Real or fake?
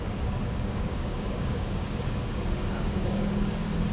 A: fake